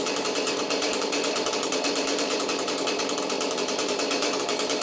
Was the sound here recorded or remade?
remade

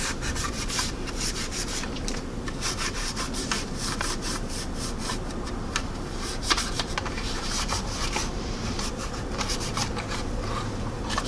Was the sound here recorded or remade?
remade